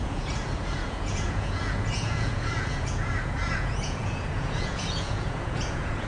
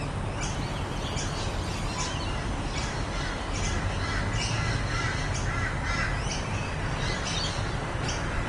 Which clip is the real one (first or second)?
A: second